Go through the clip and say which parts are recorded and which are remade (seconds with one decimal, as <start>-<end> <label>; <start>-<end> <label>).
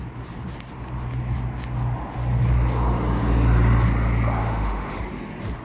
0.0-4.4 recorded; 4.4-5.0 remade; 5.0-5.6 recorded